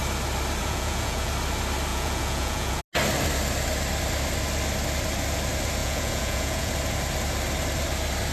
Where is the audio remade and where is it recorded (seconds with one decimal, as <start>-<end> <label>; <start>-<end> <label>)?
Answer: 0.0-0.6 recorded; 0.6-1.3 remade; 1.3-1.9 recorded; 1.9-2.8 remade; 2.8-5.8 recorded; 5.8-6.7 remade; 6.7-8.3 recorded